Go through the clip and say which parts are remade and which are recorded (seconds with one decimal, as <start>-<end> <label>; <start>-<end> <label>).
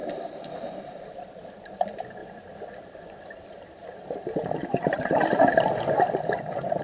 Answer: 0.0-0.8 recorded; 0.8-2.2 remade; 2.2-2.8 recorded; 2.8-6.8 remade